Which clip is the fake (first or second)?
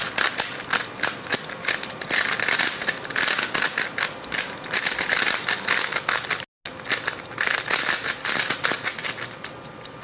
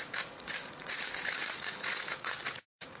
second